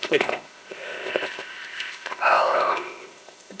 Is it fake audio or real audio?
fake